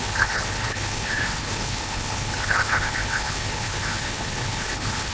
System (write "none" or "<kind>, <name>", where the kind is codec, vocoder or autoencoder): codec, HILCodec